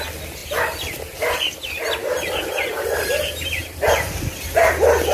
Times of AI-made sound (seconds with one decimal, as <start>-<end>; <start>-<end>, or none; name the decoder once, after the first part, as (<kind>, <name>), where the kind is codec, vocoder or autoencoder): 0.4-1.4 (vocoder, BigVGAN v2); 2.0-4.2